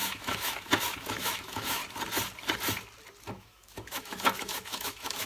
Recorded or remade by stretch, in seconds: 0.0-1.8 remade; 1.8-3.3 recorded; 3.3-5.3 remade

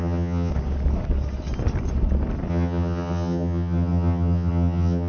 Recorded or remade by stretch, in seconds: 0.0-0.5 remade; 0.5-2.5 recorded; 2.5-5.1 remade

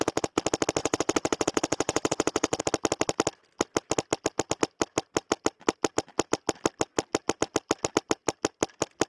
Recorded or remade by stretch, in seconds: 0.0-0.8 recorded; 0.8-2.6 remade; 2.6-9.1 recorded

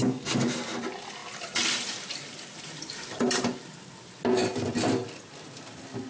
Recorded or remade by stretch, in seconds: 0.0-6.1 recorded